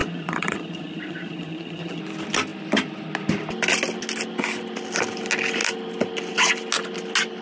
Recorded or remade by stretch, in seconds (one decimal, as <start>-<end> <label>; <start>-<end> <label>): 0.0-2.0 remade; 2.0-7.4 recorded